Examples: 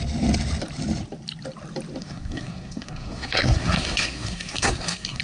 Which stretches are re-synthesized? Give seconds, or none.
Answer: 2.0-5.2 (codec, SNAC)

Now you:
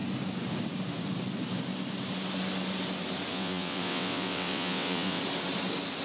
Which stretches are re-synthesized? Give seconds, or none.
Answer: 3.3-5.2 (vocoder, WaveNeXt)

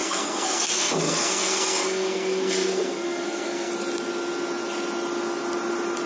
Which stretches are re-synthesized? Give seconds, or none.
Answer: 0.0-3.7 (codec, SNAC)

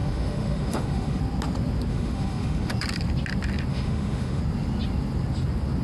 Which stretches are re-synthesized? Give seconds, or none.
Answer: 0.0-1.2 (autoencoder, DAC-VAE); 1.9-2.7; 3.7-4.4

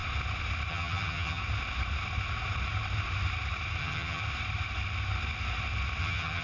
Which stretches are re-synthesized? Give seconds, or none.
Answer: 0.7-1.4 (vocoder, HiFi-GAN); 3.8-4.2; 6.0-6.4

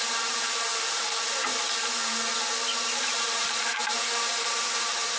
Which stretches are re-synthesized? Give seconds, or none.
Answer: 0.0-0.7 (vocoder, BigVGAN v2); 3.0-5.2

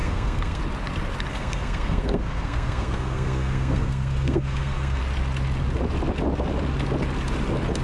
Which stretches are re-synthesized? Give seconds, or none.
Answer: 0.0-0.6 (codec, SNAC); 1.3-5.0

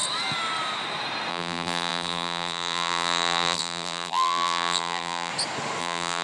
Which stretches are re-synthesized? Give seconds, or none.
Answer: 1.3-5.3 (vocoder, BigVGAN v2); 5.8-6.2